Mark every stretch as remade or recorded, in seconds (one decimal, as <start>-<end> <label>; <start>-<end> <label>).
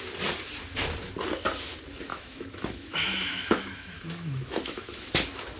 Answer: 0.0-2.1 recorded; 2.1-5.1 remade; 5.1-5.6 recorded